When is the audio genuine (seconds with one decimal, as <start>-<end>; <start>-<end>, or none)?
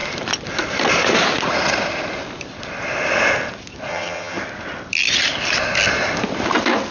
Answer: 0.0-3.9; 4.4-6.9